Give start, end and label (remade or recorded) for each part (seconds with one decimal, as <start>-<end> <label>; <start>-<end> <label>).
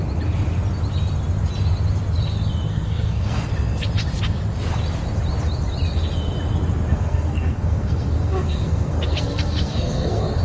0.0-2.7 recorded; 2.7-3.5 remade; 3.5-6.9 recorded; 6.9-10.4 remade